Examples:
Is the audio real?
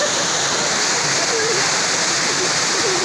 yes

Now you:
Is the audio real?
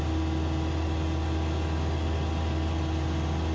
yes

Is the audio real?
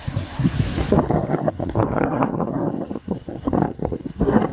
no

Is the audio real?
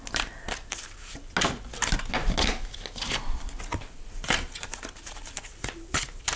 yes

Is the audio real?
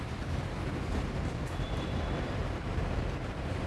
no